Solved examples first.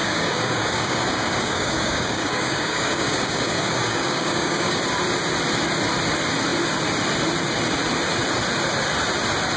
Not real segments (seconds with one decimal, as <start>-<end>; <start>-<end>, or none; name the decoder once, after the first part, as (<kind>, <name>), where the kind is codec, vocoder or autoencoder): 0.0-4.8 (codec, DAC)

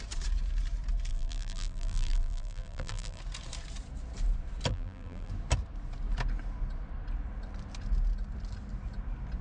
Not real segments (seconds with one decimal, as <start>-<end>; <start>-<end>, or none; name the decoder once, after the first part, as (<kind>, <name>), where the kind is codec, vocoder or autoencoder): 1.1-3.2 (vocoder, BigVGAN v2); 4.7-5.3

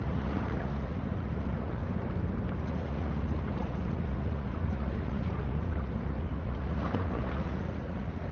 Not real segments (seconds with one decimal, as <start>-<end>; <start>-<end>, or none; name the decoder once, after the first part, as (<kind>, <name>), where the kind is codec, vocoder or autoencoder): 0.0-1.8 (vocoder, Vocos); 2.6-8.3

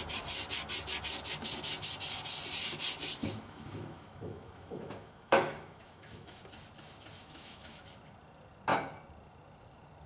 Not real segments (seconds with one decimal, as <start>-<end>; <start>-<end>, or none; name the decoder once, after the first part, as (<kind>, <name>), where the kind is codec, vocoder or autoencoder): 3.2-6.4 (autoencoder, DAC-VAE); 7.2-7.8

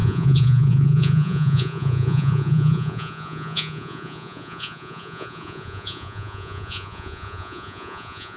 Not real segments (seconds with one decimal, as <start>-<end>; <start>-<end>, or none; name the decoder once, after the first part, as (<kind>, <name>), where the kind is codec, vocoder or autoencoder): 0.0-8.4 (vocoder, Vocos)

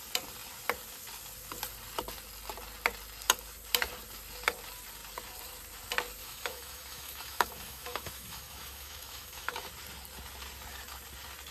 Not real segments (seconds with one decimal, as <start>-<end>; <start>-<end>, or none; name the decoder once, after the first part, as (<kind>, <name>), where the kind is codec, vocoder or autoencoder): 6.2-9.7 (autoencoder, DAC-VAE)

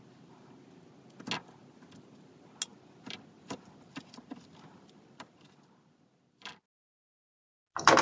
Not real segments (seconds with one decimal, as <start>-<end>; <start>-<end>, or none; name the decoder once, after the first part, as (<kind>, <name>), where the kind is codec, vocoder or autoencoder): 2.7-7.2 (vocoder, BigVGAN v2)

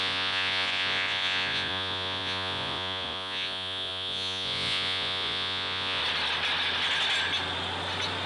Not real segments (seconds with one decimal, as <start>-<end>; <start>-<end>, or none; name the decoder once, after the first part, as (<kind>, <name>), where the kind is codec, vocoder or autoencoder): 0.0-6.0 (vocoder, Vocos)